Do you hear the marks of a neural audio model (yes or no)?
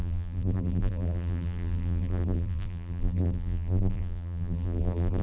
yes